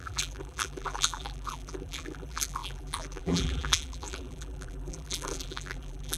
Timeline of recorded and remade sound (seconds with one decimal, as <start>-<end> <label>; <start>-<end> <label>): 0.0-6.2 remade

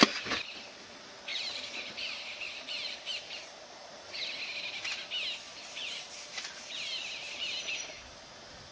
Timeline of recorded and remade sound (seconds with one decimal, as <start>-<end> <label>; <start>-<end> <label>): 0.0-1.3 recorded; 1.3-4.2 remade; 4.2-5.5 recorded; 5.5-7.7 remade; 7.7-8.7 recorded